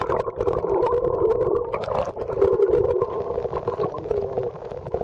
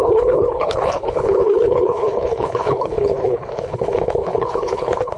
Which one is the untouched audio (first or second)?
first